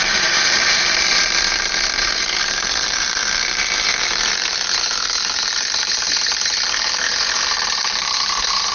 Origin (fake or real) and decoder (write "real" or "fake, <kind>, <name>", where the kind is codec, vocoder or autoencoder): fake, vocoder, BigVGAN v2